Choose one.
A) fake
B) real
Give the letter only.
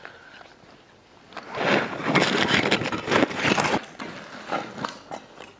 B